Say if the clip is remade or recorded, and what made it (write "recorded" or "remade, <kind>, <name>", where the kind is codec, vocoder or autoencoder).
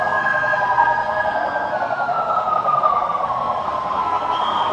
remade, codec, SNAC